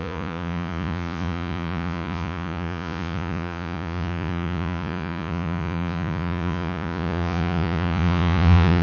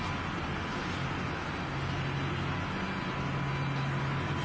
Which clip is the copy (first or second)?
first